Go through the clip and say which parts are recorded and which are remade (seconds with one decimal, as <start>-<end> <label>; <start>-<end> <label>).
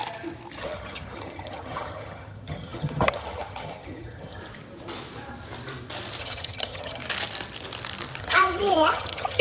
0.0-0.6 recorded; 0.6-4.4 remade; 4.4-6.2 recorded; 6.2-7.0 remade; 7.0-8.2 recorded; 8.2-9.4 remade